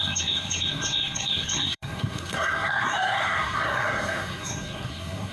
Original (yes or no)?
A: no